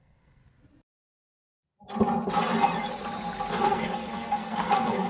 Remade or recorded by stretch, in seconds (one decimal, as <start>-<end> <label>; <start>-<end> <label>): 0.0-0.4 remade; 0.4-3.5 recorded; 3.5-5.1 remade